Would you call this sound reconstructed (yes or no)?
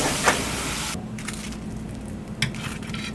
no